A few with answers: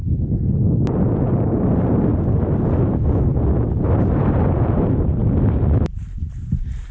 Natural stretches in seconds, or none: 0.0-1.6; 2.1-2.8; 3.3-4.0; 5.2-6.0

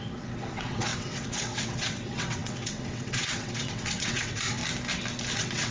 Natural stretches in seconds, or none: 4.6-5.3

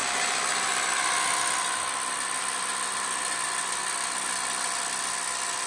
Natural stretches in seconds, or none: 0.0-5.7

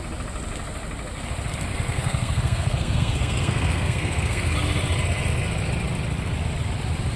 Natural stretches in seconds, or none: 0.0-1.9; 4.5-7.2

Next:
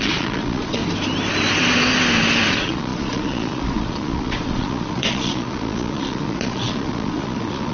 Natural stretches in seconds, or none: 0.8-2.5

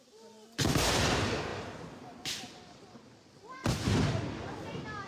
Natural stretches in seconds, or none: 0.0-5.1

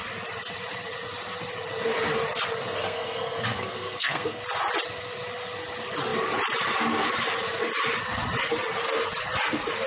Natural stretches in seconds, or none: 0.0-2.8; 4.4-9.9

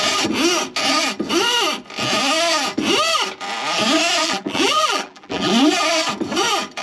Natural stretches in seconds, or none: 0.0-4.2; 5.5-6.8